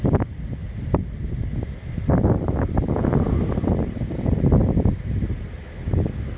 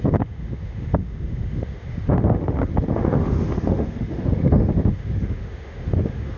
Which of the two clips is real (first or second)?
first